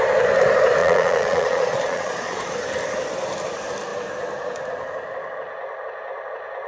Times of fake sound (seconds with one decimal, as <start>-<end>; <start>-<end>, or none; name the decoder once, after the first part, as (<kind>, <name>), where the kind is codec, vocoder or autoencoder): 0.8-2.5 (vocoder, Vocos)